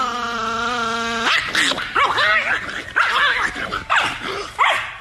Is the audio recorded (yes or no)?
yes